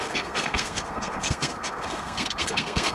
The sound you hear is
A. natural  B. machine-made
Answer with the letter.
B